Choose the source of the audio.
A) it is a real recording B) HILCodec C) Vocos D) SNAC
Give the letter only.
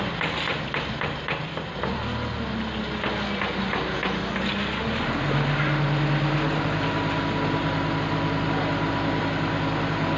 A